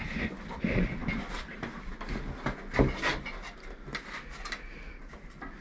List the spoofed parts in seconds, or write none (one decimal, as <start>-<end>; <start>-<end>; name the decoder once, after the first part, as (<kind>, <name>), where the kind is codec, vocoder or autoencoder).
none